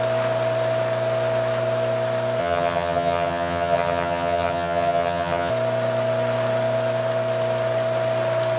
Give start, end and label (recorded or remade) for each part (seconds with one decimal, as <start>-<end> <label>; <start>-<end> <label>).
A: 0.0-2.4 recorded; 2.4-5.5 remade; 5.5-8.6 recorded